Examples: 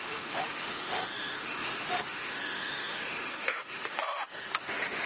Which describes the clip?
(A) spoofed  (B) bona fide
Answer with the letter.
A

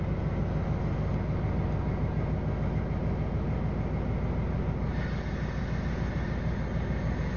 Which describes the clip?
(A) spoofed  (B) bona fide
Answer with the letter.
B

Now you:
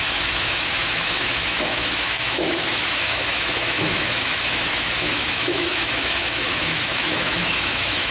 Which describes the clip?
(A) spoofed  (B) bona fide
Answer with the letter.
A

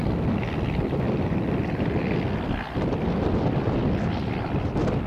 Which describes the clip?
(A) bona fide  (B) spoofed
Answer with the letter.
A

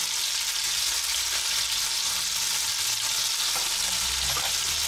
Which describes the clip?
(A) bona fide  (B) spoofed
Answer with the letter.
A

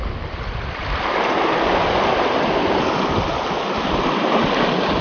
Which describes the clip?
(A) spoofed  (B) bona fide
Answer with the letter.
B